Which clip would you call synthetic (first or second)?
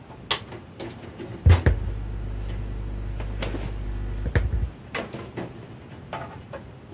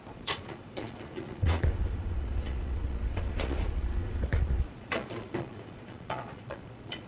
second